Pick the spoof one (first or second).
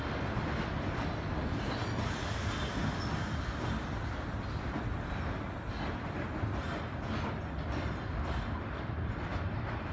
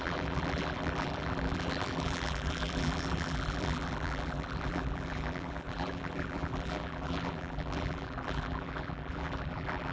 second